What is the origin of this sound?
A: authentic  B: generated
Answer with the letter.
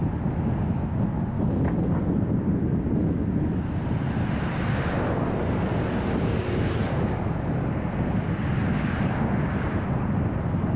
A